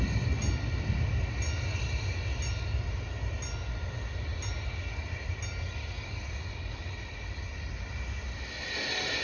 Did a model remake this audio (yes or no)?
no